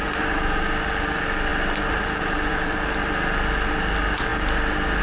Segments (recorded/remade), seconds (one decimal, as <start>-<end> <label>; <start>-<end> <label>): 0.0-5.0 recorded